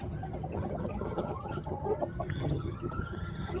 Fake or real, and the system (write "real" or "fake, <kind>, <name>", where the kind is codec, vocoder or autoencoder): fake, vocoder, HiFi-GAN